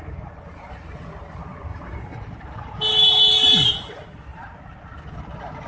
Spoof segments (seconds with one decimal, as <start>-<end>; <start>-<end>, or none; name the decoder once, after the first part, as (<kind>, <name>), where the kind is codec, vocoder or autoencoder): 1.7-3.2 (vocoder, BigVGAN v2)